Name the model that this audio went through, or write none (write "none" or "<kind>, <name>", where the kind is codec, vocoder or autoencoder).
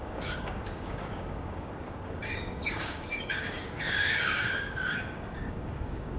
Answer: codec, DAC